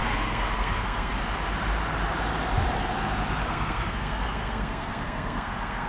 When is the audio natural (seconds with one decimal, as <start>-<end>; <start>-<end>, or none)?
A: 1.1-3.4